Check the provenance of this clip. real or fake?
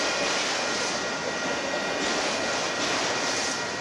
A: real